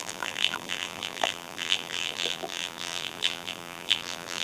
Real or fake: fake